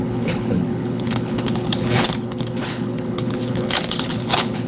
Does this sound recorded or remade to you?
remade